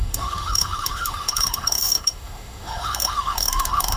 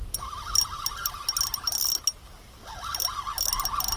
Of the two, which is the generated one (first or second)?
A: first